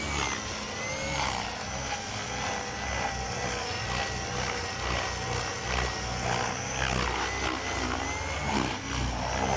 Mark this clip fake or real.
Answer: real